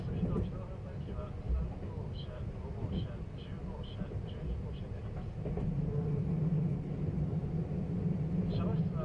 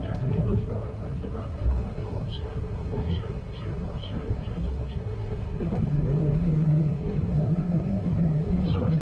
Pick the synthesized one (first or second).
second